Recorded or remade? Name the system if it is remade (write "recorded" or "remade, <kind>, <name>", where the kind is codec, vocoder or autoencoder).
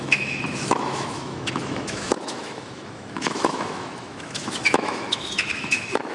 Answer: remade, autoencoder, DAC-VAE